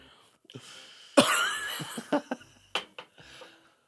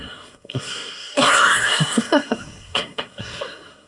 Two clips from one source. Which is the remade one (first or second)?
second